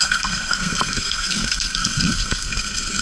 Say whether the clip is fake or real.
fake